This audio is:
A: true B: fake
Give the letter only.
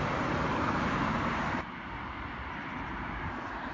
A